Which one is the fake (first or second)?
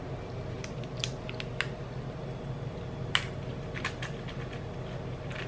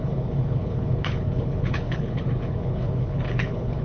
second